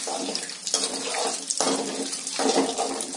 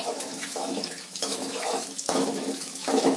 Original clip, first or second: first